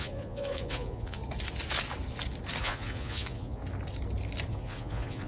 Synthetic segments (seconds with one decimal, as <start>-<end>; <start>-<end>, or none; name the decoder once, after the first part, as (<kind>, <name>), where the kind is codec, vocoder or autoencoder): 0.0-1.2 (vocoder, Vocos); 2.6-3.6; 4.5-5.3